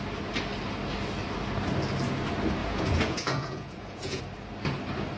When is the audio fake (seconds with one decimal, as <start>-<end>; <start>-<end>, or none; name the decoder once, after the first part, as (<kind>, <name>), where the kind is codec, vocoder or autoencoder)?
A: 2.6-4.2 (vocoder, Vocos)